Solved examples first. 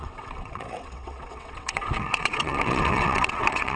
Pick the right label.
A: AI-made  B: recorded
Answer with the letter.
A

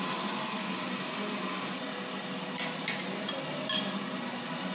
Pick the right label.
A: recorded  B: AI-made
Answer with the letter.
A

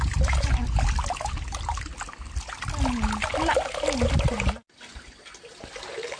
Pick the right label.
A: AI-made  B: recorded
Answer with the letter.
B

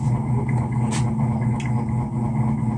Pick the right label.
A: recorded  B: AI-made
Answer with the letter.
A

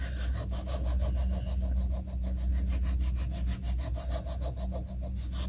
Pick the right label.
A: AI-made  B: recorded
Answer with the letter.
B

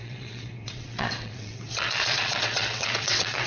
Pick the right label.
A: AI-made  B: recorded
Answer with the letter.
A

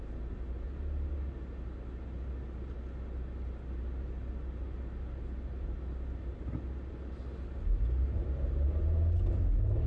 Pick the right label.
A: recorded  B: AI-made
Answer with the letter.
A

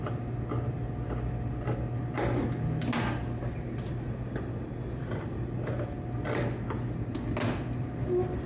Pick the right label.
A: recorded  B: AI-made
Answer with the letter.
A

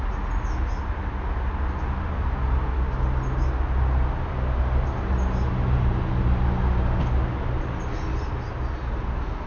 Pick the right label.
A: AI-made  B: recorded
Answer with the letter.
B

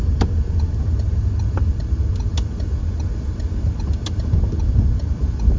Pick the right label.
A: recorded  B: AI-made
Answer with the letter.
A